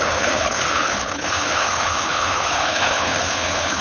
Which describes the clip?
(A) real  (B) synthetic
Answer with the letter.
B